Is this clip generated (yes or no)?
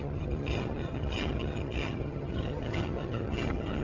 yes